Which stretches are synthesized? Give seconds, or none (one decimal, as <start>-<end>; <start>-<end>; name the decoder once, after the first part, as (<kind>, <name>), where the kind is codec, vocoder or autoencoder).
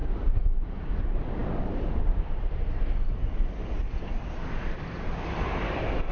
0.0-0.9 (vocoder, BigVGAN v2)